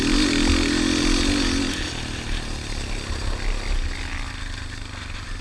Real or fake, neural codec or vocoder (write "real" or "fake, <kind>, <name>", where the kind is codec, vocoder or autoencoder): real